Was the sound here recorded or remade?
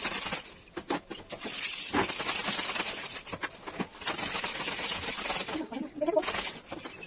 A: recorded